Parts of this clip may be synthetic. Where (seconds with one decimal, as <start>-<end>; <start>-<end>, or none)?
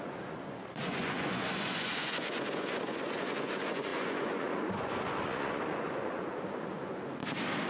0.0-7.2